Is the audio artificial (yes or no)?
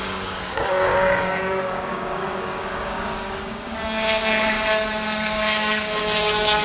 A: yes